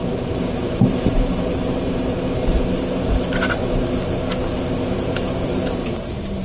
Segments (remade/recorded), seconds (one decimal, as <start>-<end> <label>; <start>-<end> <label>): 0.0-1.1 remade; 1.1-2.5 recorded; 2.5-3.6 remade; 3.6-4.6 recorded; 4.6-6.4 remade